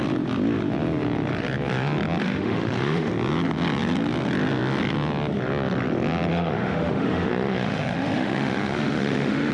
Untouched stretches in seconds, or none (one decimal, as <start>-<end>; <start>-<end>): 0.0-2.2; 3.1-6.3